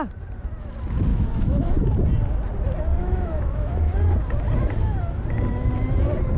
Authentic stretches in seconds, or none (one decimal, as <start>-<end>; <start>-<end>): 0.0-1.1; 1.7-3.0; 3.9-6.4